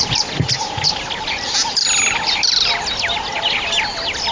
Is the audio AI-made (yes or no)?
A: no